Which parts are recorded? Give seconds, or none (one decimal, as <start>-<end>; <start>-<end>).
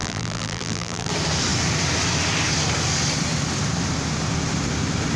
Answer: 1.1-5.2